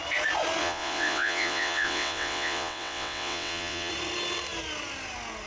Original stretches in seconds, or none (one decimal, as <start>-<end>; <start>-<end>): 0.0-0.6; 3.9-5.5